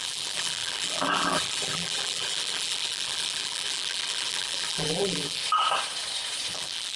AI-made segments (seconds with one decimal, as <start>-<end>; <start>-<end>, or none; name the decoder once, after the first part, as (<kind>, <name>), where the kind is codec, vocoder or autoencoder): 0.0-5.4 (vocoder, BigVGAN v2); 6.5-7.0